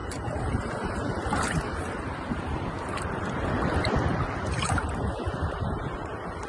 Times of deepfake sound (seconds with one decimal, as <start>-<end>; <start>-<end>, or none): 0.0-3.2; 4.1-5.8

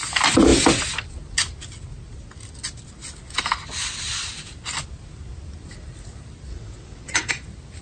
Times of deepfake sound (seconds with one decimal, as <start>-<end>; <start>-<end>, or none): 6.5-7.3

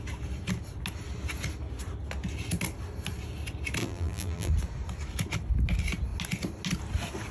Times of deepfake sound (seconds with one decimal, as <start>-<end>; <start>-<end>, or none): 3.8-4.5

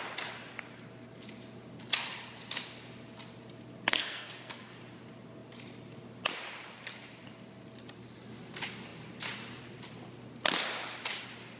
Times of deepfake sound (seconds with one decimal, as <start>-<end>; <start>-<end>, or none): 3.9-4.7